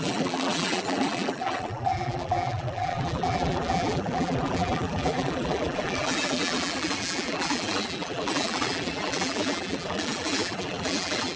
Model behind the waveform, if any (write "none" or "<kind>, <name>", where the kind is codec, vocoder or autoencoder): vocoder, BigVGAN v2